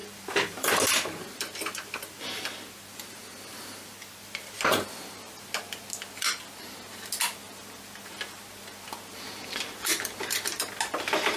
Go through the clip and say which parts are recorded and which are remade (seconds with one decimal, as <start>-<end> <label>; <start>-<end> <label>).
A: 0.0-0.7 remade; 0.7-11.4 recorded